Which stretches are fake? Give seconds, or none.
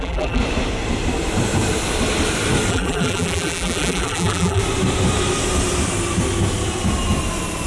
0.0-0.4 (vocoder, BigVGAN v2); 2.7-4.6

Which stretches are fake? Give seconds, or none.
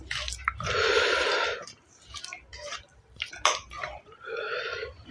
0.0-2.5 (vocoder, BigVGAN v2); 3.3-5.1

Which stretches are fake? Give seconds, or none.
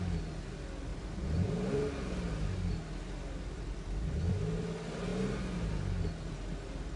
0.9-1.7 (vocoder, BigVGAN v2)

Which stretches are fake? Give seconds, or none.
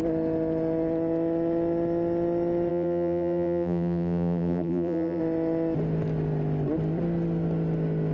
2.7-5.2 (vocoder, BigVGAN v2)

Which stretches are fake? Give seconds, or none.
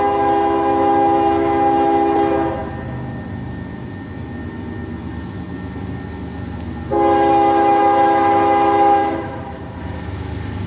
9.0-9.8 (vocoder, BigVGAN v2)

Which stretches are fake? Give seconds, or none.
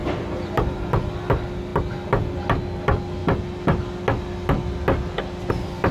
0.0-0.9 (vocoder, BigVGAN v2)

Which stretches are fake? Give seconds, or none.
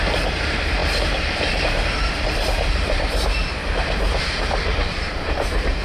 0.0-3.6 (vocoder, BigVGAN v2); 4.2-5.8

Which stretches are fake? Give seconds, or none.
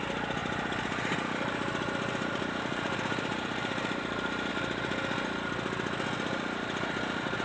0.4-4.5 (vocoder, BigVGAN v2)